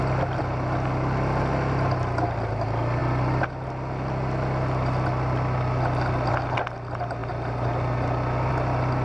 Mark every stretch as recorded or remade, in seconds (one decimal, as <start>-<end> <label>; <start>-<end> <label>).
0.0-9.0 recorded